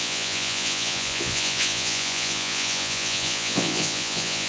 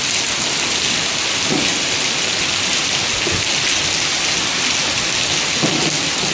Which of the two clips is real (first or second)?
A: second